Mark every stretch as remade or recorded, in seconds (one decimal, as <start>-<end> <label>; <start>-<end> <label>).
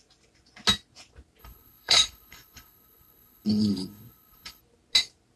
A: 0.0-1.4 recorded; 1.4-4.6 remade; 4.6-5.4 recorded